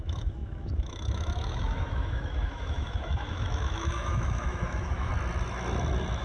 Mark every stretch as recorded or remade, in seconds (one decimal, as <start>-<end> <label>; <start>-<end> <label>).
0.0-5.1 remade; 5.1-6.2 recorded